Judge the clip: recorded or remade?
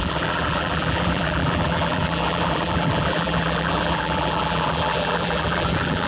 remade